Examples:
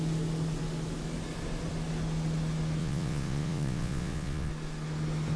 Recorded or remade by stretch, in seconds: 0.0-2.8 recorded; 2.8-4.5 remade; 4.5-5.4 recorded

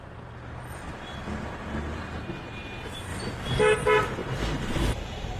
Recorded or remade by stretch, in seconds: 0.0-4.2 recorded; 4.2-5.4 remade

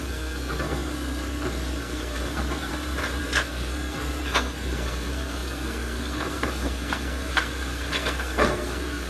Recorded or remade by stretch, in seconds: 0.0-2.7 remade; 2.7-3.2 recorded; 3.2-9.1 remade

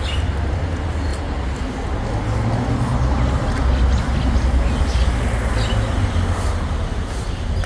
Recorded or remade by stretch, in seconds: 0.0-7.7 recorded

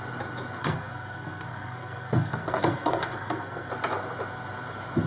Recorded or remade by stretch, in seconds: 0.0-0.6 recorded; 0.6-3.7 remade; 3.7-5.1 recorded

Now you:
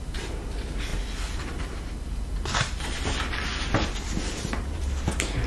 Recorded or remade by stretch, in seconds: 0.0-0.9 remade; 0.9-4.2 recorded; 4.2-5.5 remade

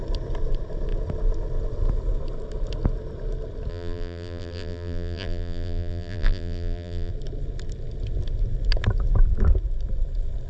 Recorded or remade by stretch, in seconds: 0.0-3.7 recorded; 3.7-7.1 remade; 7.1-10.5 recorded